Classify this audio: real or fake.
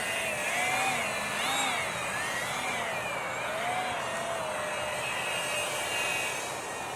real